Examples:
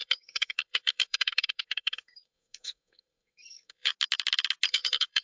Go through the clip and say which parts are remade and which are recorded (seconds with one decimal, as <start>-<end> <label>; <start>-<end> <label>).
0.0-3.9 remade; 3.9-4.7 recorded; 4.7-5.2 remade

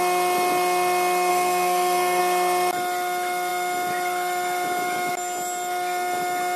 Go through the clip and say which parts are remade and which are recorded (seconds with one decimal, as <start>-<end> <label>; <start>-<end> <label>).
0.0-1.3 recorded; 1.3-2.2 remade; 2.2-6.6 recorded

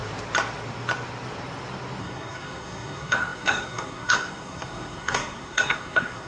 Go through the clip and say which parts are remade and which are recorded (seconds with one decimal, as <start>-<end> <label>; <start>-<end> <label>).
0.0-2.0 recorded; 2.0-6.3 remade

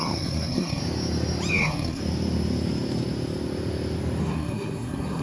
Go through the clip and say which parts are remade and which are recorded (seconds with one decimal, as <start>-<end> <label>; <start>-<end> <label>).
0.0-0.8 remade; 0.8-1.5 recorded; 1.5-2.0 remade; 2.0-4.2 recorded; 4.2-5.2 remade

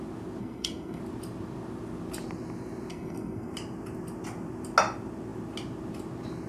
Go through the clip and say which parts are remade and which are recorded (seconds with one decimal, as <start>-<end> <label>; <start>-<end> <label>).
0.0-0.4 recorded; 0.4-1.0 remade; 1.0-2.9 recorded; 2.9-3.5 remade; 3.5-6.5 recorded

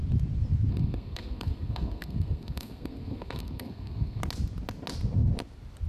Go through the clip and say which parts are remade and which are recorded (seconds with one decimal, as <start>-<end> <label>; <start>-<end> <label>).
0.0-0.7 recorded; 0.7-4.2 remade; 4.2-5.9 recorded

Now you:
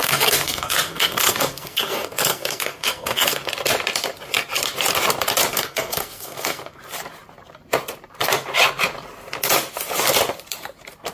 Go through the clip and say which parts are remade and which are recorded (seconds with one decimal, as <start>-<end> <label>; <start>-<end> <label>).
0.0-3.5 remade; 3.5-5.5 recorded; 5.5-6.8 remade; 6.8-11.1 recorded

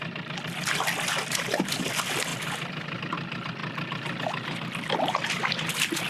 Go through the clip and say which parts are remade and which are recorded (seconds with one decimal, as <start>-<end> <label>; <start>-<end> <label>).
0.0-6.1 recorded